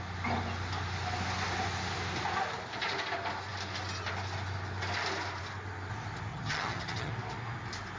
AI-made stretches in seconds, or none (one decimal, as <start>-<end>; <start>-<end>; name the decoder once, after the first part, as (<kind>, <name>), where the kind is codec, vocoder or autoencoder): 6.3-7.1 (vocoder, HiFi-GAN)